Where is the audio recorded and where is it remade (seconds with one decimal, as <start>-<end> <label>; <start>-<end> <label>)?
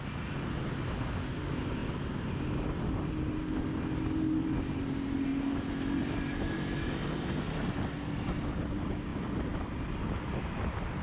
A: 0.0-11.0 recorded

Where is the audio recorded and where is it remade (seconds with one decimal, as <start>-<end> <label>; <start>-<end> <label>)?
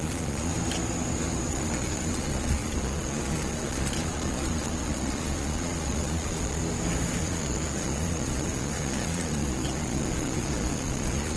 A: 0.0-0.5 remade; 0.5-1.5 recorded; 1.5-6.6 remade; 6.6-7.2 recorded; 7.2-11.4 remade